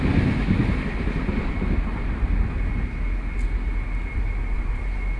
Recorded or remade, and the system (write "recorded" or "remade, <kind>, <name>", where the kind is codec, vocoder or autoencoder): recorded